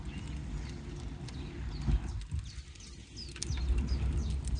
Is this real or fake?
real